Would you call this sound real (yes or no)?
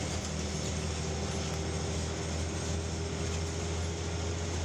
yes